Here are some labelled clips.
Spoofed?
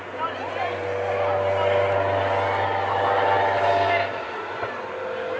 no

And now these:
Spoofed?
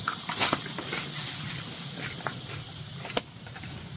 no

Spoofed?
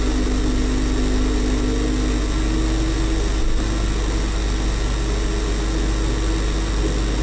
no